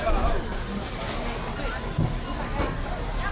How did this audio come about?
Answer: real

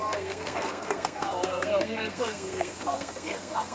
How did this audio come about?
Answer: fake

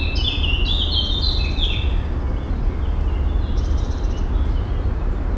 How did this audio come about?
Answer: real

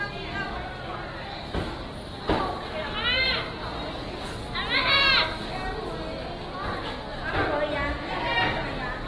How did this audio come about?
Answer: real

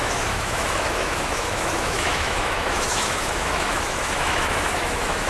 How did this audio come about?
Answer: fake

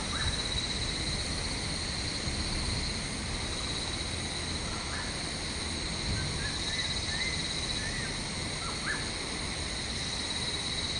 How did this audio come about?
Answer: real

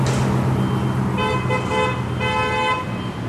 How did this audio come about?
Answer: real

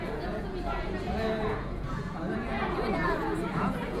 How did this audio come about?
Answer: fake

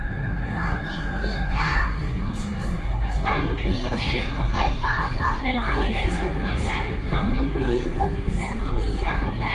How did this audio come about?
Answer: fake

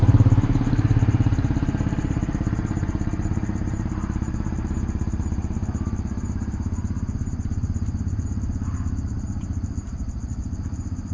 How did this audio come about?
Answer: fake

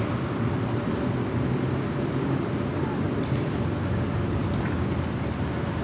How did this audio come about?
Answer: fake